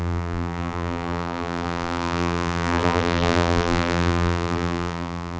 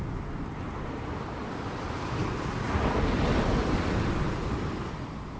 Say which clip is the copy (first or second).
first